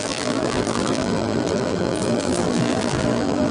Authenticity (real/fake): fake